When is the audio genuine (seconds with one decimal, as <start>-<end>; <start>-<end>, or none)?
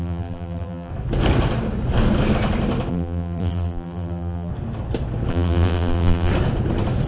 0.9-2.9; 4.5-5.3; 6.3-7.1